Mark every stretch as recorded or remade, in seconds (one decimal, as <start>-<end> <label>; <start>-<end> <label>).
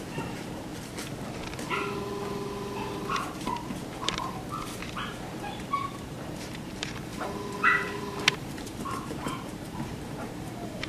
0.0-0.7 remade; 0.7-5.5 recorded; 5.5-10.9 remade